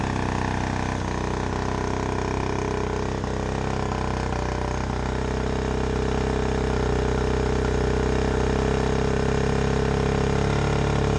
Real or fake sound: real